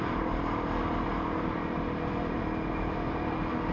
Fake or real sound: real